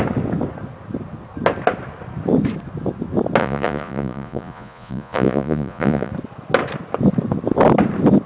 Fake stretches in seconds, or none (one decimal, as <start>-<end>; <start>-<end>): 3.4-6.1